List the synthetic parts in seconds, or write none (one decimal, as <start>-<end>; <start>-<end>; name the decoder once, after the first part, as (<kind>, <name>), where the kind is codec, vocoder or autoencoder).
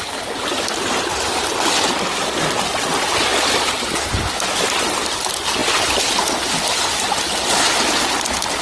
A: none